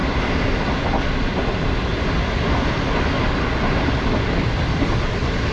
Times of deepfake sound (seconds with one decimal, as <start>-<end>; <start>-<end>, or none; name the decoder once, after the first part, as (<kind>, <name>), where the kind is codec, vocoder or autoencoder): none

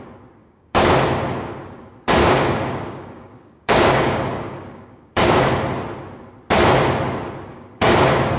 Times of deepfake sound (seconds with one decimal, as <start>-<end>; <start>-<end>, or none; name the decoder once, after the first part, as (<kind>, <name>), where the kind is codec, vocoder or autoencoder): 0.4-0.9 (codec, DAC); 2.2-5.5; 7.5-8.4

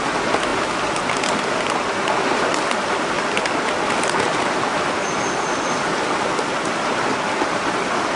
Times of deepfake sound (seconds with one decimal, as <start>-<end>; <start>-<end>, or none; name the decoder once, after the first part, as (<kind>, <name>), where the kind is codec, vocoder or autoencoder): none

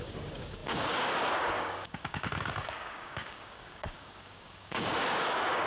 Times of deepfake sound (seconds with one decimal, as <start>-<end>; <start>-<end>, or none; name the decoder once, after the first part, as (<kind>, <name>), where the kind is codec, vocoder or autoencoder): 0.0-5.7 (codec, DAC)

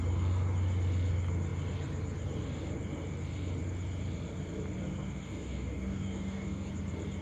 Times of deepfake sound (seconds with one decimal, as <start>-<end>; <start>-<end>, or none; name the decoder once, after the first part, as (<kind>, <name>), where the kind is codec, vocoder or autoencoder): 5.2-6.7 (codec, DAC)

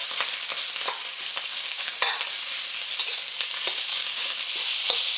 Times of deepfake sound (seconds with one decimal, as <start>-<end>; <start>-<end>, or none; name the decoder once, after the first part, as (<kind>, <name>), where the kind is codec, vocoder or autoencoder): 1.5-2.0 (codec, DAC); 3.9-4.4

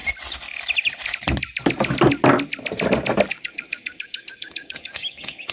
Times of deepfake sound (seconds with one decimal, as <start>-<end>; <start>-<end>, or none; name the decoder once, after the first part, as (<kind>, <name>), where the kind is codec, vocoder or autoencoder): 3.3-5.5 (codec, DAC)